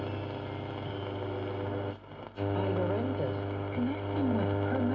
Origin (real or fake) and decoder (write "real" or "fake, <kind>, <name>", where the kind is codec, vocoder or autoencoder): real